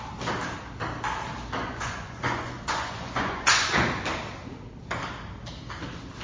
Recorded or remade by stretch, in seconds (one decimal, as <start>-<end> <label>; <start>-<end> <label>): 0.0-1.6 recorded; 1.6-3.9 remade; 3.9-6.2 recorded